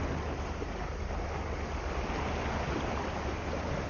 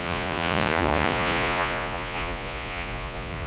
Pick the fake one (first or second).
second